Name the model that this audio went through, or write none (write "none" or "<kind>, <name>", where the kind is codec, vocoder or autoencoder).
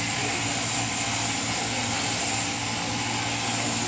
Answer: none